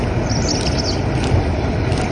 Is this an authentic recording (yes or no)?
yes